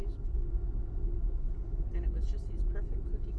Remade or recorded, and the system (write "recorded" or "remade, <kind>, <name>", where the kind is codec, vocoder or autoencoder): recorded